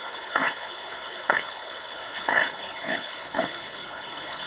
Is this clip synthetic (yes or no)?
yes